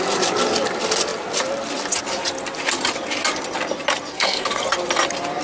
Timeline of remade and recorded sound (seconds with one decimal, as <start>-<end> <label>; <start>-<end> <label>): 0.0-4.1 recorded; 4.1-4.6 remade; 4.6-5.4 recorded